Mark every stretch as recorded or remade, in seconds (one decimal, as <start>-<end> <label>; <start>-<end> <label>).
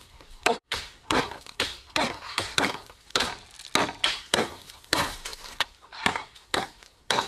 0.0-3.3 remade; 3.3-4.1 recorded; 4.1-7.3 remade